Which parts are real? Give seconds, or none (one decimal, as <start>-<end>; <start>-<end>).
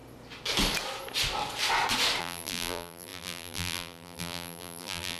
0.0-2.2